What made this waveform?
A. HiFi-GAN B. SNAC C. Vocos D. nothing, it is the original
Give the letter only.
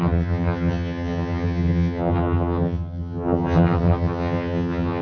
A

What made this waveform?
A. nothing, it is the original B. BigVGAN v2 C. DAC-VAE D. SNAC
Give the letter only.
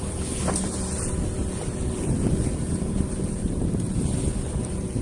B